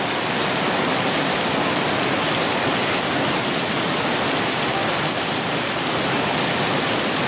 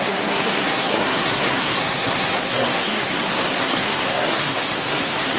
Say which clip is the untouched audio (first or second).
first